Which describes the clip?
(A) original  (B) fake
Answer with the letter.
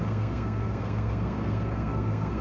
B